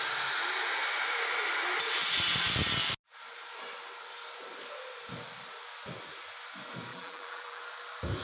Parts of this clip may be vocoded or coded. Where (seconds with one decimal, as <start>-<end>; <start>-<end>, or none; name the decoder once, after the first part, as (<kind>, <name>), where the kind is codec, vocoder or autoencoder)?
6.9-7.6 (vocoder, BigVGAN v2)